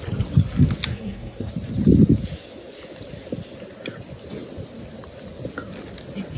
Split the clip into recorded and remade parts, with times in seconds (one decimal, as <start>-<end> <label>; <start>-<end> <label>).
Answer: 0.0-0.9 recorded; 0.9-1.5 remade; 1.5-6.4 recorded